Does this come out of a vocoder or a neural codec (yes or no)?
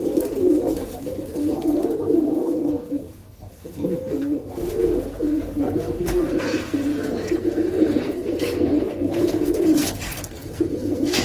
yes